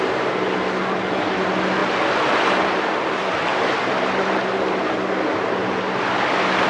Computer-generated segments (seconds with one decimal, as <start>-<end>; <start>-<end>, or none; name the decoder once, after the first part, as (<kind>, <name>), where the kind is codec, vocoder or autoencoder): none